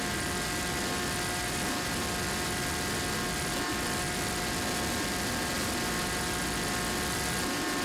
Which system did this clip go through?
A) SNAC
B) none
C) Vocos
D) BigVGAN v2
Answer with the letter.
B